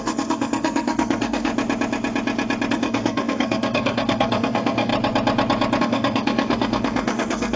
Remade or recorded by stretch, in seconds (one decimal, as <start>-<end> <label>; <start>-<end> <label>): 0.0-1.5 remade; 1.5-2.7 recorded; 2.7-4.9 remade; 4.9-5.8 recorded; 5.8-7.6 remade